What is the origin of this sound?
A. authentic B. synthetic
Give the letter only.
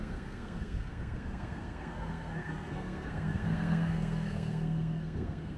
B